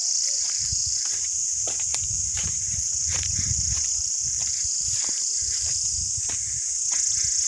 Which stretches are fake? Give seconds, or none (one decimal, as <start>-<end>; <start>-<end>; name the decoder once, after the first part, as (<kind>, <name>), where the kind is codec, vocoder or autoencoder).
0.0-1.1 (vocoder, BigVGAN v2); 1.9-6.2